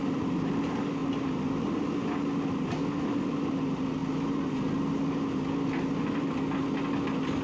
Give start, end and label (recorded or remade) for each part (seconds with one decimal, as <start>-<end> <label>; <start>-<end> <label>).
0.0-7.4 recorded

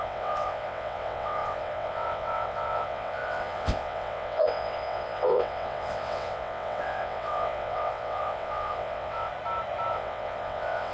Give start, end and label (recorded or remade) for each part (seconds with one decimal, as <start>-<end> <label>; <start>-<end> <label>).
0.0-9.3 remade; 9.3-9.9 recorded; 9.9-10.9 remade